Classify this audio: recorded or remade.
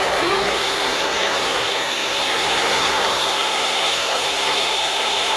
remade